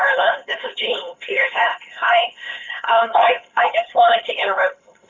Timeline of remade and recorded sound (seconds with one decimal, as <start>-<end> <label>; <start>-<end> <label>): 0.0-5.1 remade